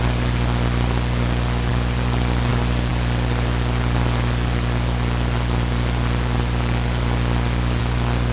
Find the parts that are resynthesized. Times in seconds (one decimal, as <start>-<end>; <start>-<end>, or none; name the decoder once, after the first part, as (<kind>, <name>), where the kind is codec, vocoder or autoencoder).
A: none